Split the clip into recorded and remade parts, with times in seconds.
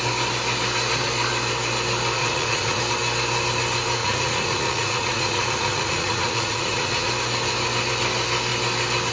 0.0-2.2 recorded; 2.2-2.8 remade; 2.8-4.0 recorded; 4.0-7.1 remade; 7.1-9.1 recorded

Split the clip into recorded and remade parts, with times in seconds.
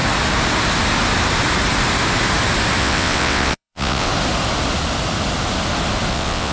0.0-2.8 recorded; 2.8-4.1 remade; 4.1-6.1 recorded; 6.1-6.5 remade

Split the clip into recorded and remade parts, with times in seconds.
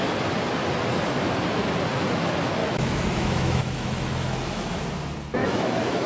0.0-2.6 recorded; 2.6-4.8 remade; 4.8-5.4 recorded; 5.4-6.1 remade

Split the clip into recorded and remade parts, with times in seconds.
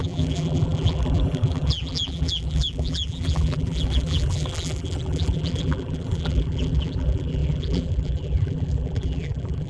0.0-9.7 remade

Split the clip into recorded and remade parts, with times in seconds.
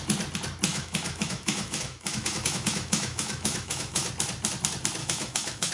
0.0-0.7 recorded; 0.7-4.1 remade; 4.1-5.0 recorded; 5.0-5.7 remade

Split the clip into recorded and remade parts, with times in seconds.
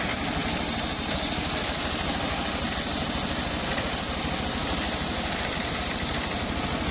0.0-6.9 recorded